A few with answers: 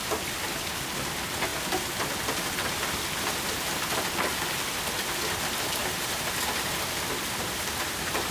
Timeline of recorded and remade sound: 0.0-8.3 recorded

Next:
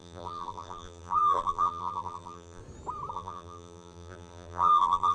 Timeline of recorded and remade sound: 0.0-2.6 remade; 2.6-3.1 recorded; 3.1-5.1 remade

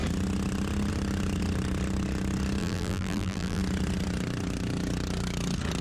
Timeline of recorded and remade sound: 0.0-2.6 recorded; 2.6-3.6 remade; 3.6-5.8 recorded

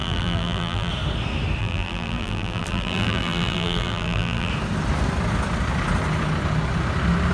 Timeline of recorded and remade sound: 0.0-0.9 remade; 0.9-1.6 recorded; 1.6-4.5 remade; 4.5-7.3 recorded